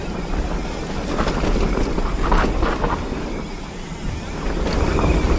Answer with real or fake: real